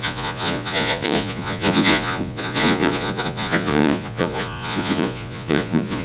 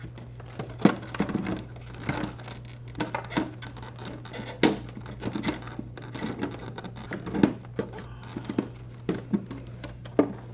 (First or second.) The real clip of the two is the second